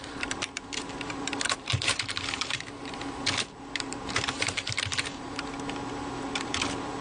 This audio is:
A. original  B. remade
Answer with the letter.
B